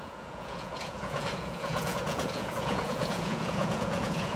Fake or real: fake